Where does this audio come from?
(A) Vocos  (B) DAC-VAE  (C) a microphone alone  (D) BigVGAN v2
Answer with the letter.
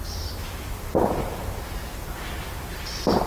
C